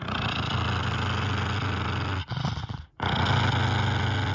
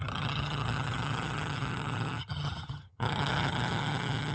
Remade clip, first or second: second